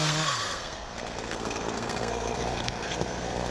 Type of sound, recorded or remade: remade